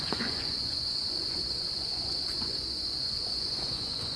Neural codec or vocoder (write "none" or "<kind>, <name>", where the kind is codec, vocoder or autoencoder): vocoder, Vocos